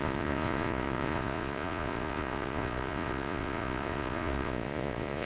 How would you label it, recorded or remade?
remade